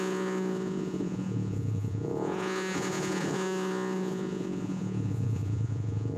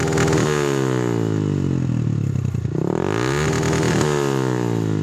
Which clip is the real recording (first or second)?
second